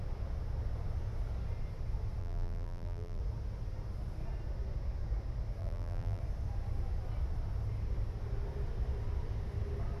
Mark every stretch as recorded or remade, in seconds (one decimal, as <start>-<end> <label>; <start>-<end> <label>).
0.0-2.2 recorded; 2.2-3.2 remade; 3.2-5.6 recorded; 5.6-6.2 remade; 6.2-10.0 recorded